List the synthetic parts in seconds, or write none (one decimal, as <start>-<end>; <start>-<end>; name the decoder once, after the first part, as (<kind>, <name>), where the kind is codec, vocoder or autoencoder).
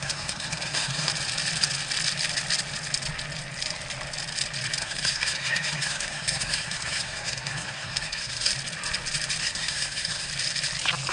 0.0-1.1 (codec, SNAC); 4.8-8.5; 9.4-10.3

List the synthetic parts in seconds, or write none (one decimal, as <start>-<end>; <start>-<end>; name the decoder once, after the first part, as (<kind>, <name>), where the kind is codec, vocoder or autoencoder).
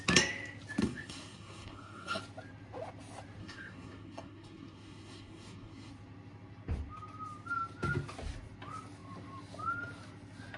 0.8-2.2 (codec, SNAC); 3.4-5.9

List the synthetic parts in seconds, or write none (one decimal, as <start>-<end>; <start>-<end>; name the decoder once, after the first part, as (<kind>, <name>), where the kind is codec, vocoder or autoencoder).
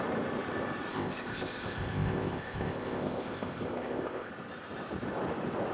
0.9-4.3 (codec, ZipCodec)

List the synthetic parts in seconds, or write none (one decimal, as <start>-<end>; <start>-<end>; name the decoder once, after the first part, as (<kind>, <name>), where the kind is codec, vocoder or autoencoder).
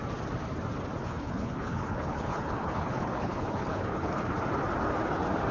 1.0-4.3 (codec, HILCodec)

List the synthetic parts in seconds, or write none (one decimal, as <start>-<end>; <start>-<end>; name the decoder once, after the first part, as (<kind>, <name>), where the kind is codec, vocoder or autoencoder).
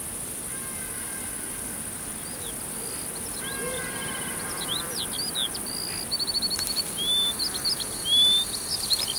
none